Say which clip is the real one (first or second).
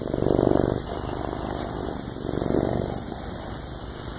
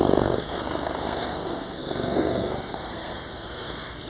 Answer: first